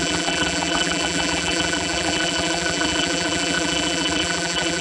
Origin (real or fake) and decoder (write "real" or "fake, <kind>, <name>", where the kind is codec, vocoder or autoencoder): fake, vocoder, BigVGAN v2